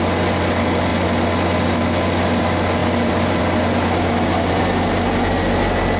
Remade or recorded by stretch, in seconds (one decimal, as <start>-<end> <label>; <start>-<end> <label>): 0.0-2.8 recorded; 2.8-3.4 remade; 3.4-6.0 recorded